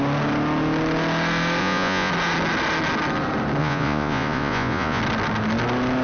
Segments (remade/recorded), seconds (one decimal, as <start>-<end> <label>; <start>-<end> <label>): 0.0-1.6 recorded; 1.6-2.1 remade; 2.1-3.6 recorded; 3.6-5.0 remade; 5.0-6.0 recorded